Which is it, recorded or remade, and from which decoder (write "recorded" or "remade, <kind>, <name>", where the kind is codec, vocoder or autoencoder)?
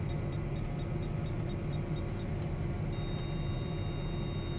recorded